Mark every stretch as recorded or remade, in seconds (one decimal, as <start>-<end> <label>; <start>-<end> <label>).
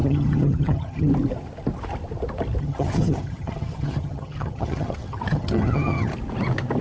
0.0-1.1 remade; 1.1-2.6 recorded; 2.6-6.1 remade; 6.1-6.8 recorded